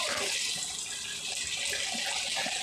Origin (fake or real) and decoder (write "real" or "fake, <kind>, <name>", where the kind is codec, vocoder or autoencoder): real